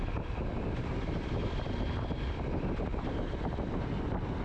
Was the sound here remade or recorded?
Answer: recorded